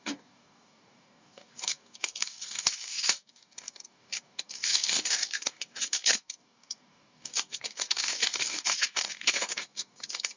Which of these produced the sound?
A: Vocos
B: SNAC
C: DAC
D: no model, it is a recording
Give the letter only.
C